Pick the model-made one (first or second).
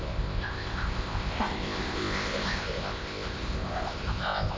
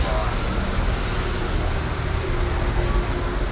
first